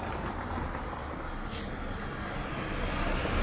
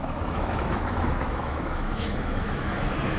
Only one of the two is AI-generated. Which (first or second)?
second